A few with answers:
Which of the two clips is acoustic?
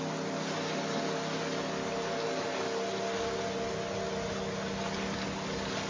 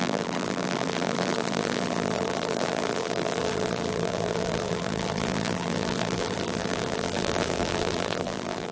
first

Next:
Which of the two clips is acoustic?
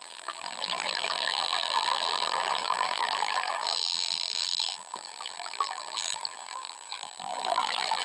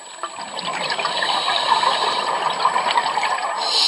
second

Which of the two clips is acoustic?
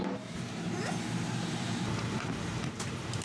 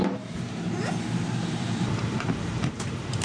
first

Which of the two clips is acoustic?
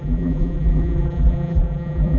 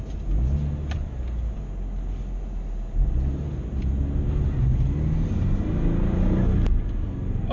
second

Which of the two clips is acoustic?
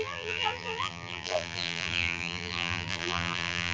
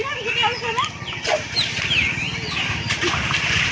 second